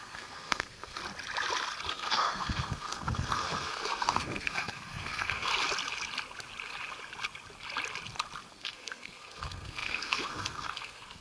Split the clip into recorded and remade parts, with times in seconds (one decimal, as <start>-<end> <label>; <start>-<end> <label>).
0.0-1.0 remade; 1.0-1.9 recorded; 1.9-5.5 remade; 5.5-8.5 recorded; 8.5-11.2 remade